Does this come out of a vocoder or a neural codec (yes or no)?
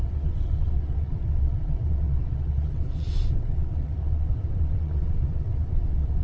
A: yes